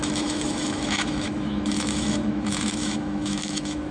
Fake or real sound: fake